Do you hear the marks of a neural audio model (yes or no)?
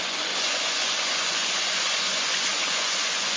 yes